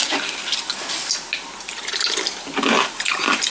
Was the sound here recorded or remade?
recorded